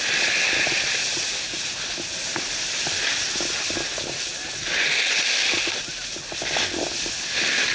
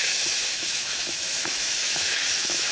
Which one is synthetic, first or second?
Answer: second